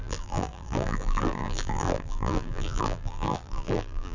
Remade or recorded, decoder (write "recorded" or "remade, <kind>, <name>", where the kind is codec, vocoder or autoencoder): remade, vocoder, BigVGAN v2